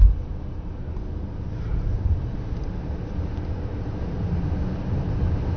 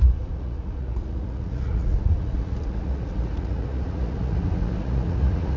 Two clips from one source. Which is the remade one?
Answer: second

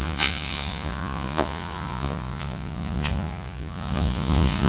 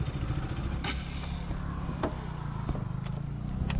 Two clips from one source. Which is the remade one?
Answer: first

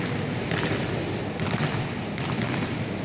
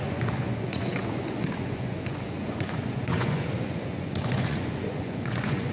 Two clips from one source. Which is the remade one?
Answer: second